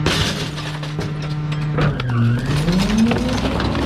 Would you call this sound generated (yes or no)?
no